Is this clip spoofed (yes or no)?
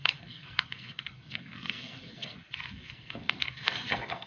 yes